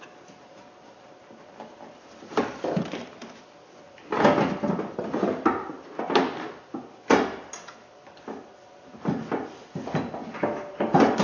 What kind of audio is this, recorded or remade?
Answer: recorded